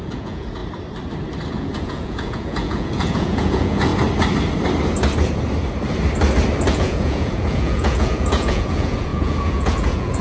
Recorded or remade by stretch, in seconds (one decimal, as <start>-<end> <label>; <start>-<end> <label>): 0.0-0.6 remade; 0.6-1.5 recorded; 1.5-3.9 remade; 3.9-6.7 recorded; 6.7-10.2 remade